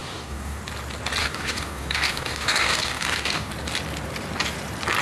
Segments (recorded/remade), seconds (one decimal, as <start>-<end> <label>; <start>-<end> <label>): 0.0-0.6 remade; 0.6-1.2 recorded; 1.2-3.5 remade; 3.5-5.0 recorded